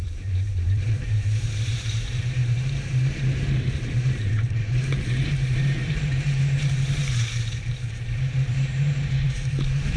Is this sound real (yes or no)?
no